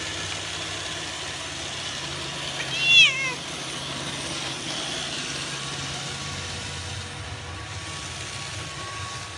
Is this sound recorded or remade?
recorded